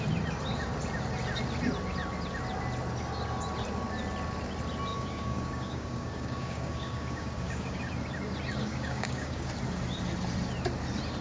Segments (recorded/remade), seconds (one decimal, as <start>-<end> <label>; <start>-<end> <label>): 0.0-4.9 recorded; 4.9-7.9 remade; 7.9-8.6 recorded; 8.6-9.5 remade; 9.5-11.2 recorded